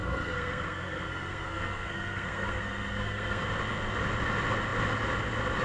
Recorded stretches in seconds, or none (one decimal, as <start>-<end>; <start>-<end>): 3.4-5.6

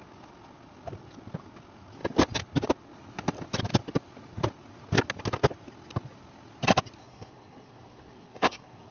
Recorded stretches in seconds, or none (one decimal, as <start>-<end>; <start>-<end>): 0.0-7.0